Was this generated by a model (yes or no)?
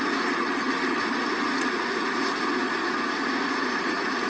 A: yes